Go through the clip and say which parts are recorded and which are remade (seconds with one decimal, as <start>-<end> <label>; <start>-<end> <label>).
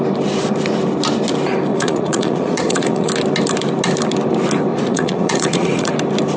0.0-1.7 recorded; 1.7-3.1 remade; 3.1-4.7 recorded; 4.7-5.9 remade; 5.9-6.4 recorded